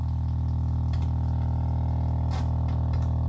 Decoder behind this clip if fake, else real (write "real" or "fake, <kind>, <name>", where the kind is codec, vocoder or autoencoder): real